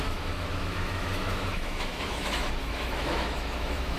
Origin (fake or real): fake